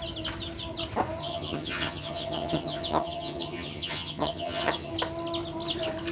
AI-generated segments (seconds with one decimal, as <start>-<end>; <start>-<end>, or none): 1.2-4.9